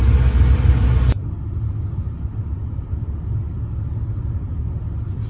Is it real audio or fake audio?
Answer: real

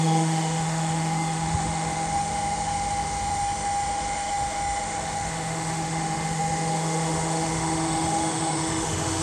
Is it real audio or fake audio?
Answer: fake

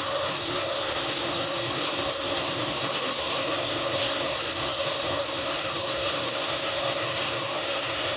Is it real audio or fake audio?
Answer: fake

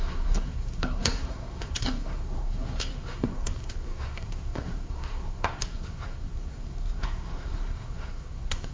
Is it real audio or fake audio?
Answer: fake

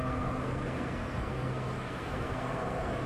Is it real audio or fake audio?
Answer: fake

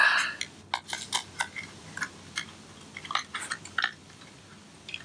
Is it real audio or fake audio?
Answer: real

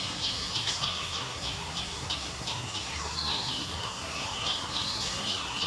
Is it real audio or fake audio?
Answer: fake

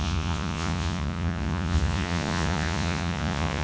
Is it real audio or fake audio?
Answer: fake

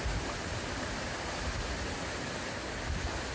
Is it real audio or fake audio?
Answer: real